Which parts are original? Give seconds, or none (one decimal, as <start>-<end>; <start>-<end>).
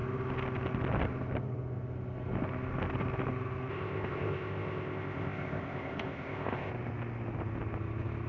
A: 0.0-3.7; 6.7-8.3